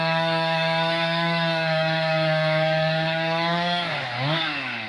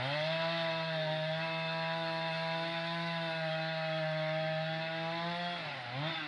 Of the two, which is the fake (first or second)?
first